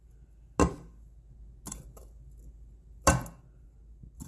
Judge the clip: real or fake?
real